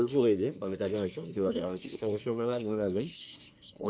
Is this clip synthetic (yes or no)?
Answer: yes